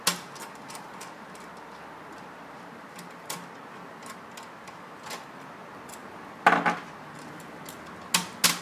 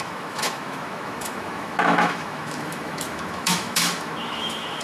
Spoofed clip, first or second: second